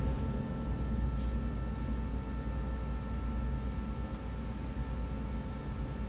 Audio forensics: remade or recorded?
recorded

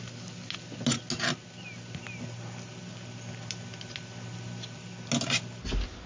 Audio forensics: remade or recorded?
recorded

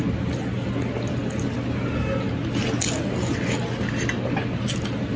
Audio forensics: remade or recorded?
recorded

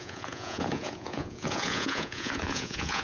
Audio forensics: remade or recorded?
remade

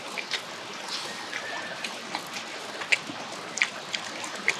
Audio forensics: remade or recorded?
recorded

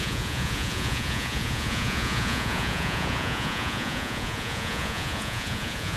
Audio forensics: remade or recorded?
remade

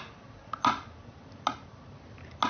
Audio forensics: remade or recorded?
recorded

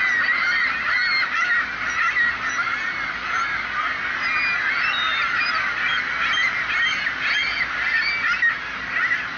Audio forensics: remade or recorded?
recorded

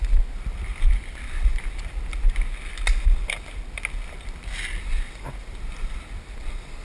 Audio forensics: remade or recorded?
recorded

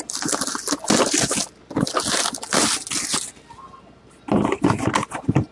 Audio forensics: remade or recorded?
recorded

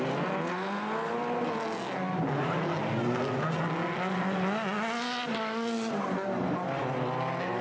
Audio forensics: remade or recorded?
recorded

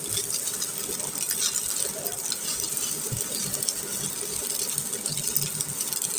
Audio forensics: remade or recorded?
recorded